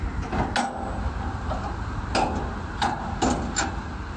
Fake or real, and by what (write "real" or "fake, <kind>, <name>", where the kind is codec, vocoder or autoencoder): real